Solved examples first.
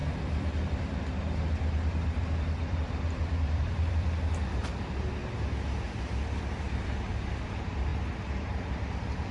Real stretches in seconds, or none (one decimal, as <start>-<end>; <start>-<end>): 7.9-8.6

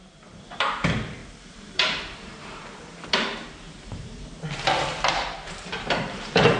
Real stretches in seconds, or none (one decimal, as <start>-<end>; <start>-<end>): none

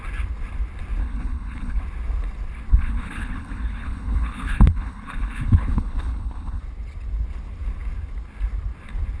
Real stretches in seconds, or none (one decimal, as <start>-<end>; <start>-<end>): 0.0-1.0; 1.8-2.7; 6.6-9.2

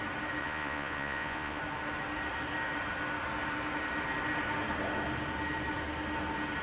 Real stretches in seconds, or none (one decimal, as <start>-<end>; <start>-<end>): 0.0-0.4; 1.6-6.6

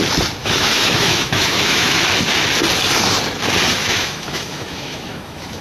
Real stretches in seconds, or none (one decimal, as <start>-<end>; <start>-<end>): 0.0-0.4; 2.0-3.8

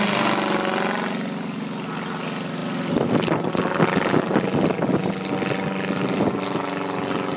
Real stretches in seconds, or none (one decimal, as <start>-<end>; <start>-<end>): 0.0-7.4